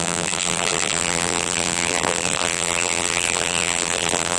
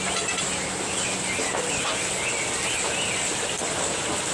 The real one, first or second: second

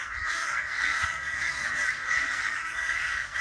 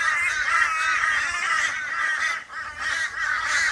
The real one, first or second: second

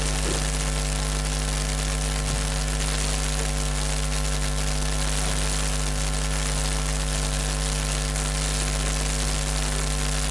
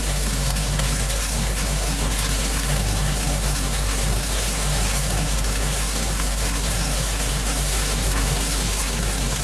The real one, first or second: first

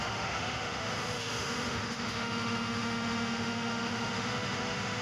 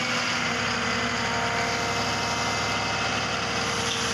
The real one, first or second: second